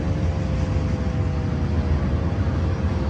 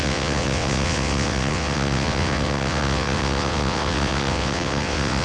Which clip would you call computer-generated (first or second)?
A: second